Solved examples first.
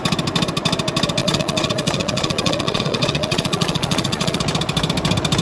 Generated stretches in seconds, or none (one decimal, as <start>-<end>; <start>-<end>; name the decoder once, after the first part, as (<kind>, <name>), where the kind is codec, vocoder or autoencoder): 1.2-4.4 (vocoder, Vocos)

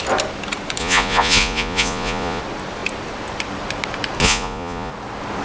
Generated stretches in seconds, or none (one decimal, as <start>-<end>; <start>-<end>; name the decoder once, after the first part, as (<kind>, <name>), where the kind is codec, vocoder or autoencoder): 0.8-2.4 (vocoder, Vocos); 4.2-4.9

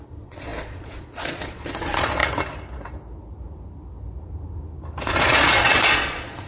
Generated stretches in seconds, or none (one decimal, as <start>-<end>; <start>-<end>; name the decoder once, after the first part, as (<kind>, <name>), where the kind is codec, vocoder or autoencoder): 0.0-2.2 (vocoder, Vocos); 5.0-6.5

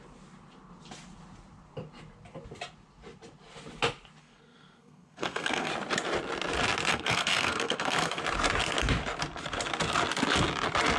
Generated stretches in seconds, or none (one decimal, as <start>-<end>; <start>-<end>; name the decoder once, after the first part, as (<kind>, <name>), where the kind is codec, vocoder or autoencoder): 4.2-5.7 (codec, SNAC); 6.9-8.2

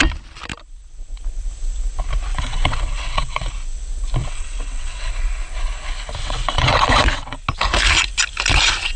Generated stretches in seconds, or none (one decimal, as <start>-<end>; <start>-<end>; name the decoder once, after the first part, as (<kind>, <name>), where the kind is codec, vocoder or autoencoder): 2.3-3.5 (vocoder, WaveNeXt); 4.2-5.1; 6.2-7.4

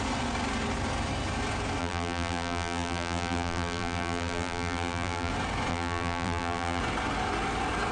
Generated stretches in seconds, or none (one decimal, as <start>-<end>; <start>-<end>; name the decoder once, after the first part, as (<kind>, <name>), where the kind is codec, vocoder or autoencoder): 1.8-5.3 (vocoder, BigVGAN v2); 5.7-6.8

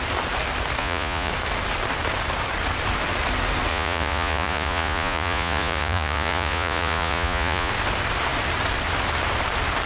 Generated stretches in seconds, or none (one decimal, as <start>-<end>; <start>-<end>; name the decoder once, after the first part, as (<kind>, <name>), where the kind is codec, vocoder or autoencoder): 0.8-1.3 (vocoder, Vocos); 3.7-7.7